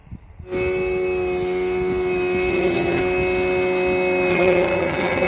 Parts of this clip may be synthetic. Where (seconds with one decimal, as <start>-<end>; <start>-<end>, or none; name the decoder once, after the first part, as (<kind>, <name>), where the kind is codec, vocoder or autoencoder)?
2.5-3.0 (vocoder, HiFi-GAN); 4.3-5.3